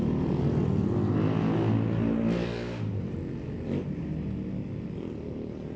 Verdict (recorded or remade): recorded